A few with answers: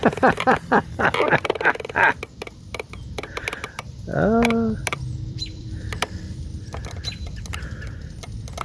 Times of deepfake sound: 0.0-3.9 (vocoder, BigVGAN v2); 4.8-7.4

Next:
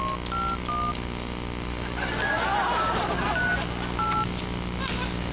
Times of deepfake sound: none

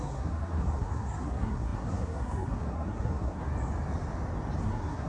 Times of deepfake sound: 0.0-3.5 (codec, SNAC); 4.6-5.1

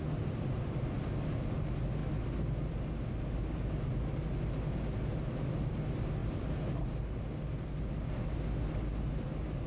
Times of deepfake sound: none

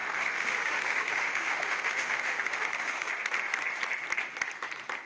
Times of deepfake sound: 0.0-3.1 (autoencoder, DAC-VAE)